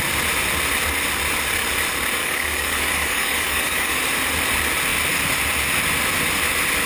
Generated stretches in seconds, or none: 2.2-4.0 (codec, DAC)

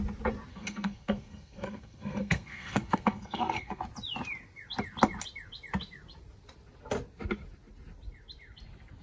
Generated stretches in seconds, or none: 0.5-3.8 (codec, SNAC)

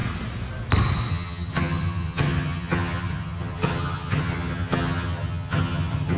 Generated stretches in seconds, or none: 1.1-6.2 (vocoder, HiFi-GAN)

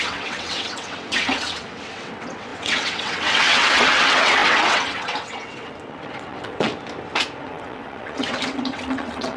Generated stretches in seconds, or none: 0.0-6.7 (vocoder, WaveNeXt); 7.4-9.4